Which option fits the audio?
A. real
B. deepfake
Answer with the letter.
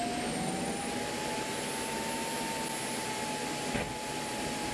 A